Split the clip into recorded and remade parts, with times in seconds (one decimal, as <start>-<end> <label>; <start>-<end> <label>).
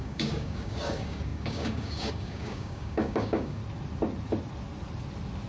0.0-3.6 remade; 3.6-5.5 recorded